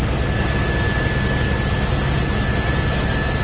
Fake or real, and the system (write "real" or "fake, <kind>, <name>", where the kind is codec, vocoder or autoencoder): real